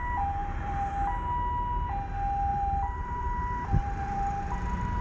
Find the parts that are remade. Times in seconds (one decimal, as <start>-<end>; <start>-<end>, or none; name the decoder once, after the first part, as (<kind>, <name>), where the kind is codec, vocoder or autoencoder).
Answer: 0.4-0.9 (vocoder, BigVGAN v2); 2.5-4.4

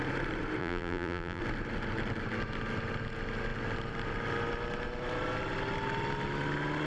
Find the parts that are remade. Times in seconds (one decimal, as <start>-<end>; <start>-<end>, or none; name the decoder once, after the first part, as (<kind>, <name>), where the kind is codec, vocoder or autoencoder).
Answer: 0.6-1.4 (vocoder, BigVGAN v2)

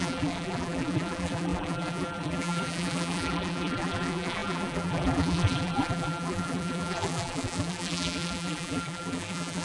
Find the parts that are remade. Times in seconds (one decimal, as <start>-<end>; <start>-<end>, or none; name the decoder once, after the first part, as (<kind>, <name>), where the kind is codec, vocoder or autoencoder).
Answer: 0.0-9.6 (vocoder, BigVGAN v2)

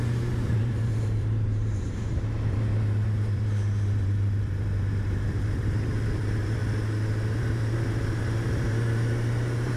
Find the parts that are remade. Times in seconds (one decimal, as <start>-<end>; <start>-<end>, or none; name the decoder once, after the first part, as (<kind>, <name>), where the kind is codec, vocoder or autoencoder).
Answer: 0.0-6.6 (vocoder, BigVGAN v2); 7.3-9.8

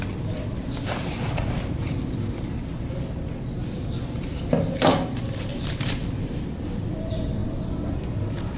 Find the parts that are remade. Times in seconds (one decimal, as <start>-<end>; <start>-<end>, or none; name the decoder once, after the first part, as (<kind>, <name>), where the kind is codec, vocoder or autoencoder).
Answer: 0.0-4.9 (vocoder, BigVGAN v2); 5.5-7.4

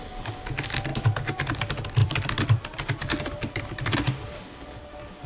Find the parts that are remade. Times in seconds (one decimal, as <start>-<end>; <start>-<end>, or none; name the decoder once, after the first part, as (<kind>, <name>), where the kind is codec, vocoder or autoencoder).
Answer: 2.0-5.3 (vocoder, BigVGAN v2)

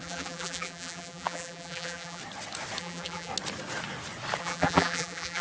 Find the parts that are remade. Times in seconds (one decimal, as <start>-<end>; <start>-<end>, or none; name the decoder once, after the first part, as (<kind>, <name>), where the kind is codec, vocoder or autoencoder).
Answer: 0.0-2.2 (vocoder, BigVGAN v2); 2.8-3.3; 4.4-5.4